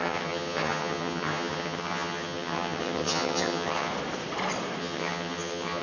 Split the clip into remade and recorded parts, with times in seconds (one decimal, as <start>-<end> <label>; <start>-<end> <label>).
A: 0.0-3.9 remade; 3.9-4.8 recorded; 4.8-5.8 remade